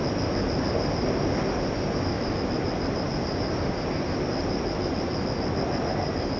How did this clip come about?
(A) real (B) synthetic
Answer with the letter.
B